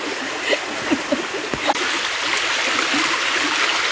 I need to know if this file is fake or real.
real